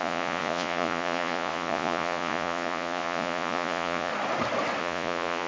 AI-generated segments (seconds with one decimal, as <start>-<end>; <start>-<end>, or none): 0.0-4.1; 4.8-5.5